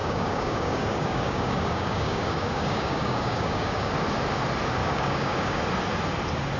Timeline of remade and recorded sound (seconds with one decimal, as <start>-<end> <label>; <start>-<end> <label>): 0.0-3.9 remade; 3.9-4.8 recorded; 4.8-5.6 remade; 5.6-6.6 recorded